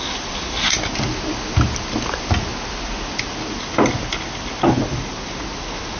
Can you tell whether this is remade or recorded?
recorded